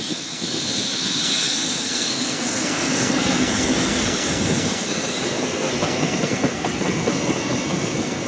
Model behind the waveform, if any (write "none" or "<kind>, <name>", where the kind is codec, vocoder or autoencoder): codec, SNAC